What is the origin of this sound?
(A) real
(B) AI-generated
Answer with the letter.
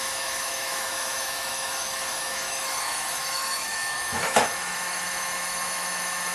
B